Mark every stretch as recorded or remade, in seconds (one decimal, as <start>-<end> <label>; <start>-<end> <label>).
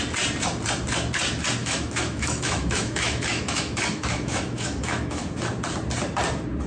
0.0-1.6 recorded; 1.6-5.4 remade; 5.4-6.7 recorded